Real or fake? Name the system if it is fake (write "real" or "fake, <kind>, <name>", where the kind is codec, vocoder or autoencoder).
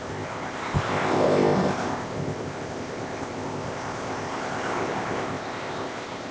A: fake, codec, ZipCodec